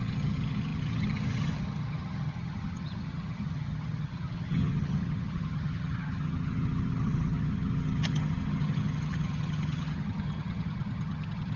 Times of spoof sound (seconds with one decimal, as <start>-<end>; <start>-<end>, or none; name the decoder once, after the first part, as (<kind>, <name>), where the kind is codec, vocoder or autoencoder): 0.0-11.6 (vocoder, HiFi-GAN)